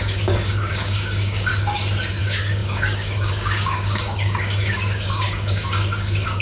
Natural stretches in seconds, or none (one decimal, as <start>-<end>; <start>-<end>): 1.5-2.2